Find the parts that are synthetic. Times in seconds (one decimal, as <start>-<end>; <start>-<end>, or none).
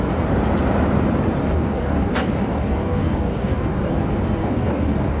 1.4-3.9; 4.4-5.2